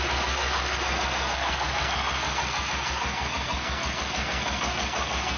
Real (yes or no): no